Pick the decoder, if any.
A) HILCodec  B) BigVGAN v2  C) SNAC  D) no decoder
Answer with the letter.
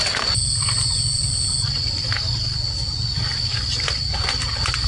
D